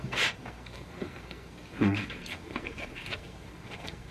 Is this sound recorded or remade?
remade